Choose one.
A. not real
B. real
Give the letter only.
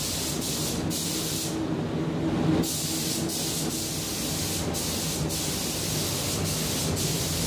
B